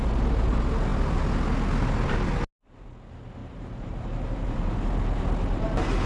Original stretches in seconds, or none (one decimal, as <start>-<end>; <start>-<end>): 0.0-3.4; 4.7-6.1